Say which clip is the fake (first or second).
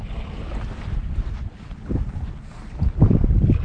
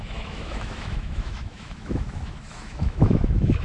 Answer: second